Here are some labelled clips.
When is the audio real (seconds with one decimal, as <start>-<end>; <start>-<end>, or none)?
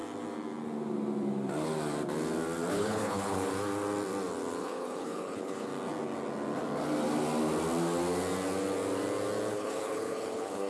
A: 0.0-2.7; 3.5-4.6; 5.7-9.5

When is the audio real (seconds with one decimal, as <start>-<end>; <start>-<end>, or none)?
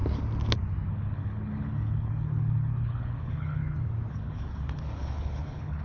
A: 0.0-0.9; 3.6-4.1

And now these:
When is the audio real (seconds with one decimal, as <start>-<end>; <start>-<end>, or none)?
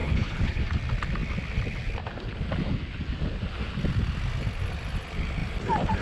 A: 0.6-6.0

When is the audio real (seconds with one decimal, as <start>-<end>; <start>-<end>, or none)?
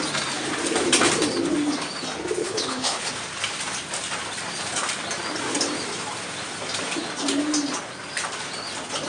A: 0.0-2.4; 3.1-9.1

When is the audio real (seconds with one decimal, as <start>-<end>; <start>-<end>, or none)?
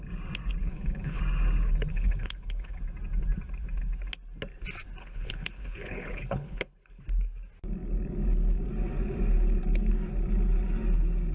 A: 0.0-0.6; 1.2-1.9; 2.8-5.0; 7.0-11.3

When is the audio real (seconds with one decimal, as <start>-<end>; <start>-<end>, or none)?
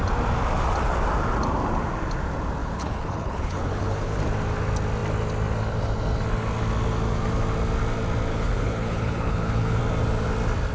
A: 0.0-2.6; 4.2-8.3; 9.8-10.7